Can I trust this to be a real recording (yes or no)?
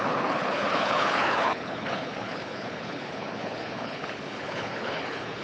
no